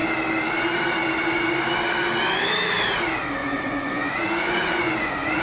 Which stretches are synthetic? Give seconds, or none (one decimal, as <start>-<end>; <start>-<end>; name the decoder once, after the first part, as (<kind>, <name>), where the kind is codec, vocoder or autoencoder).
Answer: 3.4-5.4 (vocoder, Vocos)